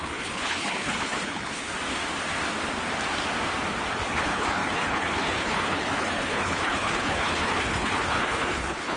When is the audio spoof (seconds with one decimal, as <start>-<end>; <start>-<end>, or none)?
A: 0.0-1.7; 3.9-9.0